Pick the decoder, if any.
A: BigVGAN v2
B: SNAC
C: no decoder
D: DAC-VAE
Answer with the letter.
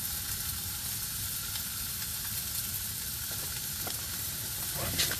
C